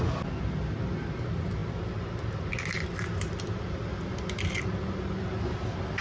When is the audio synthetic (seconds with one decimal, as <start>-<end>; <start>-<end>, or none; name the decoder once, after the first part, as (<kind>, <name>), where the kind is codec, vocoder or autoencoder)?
none